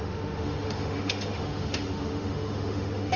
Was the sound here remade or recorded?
remade